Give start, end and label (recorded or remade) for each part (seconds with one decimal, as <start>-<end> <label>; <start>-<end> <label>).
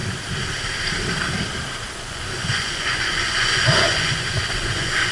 0.0-2.0 recorded; 2.0-5.1 remade